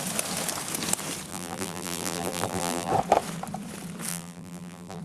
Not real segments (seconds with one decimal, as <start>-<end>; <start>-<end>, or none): 1.3-2.9; 4.1-5.0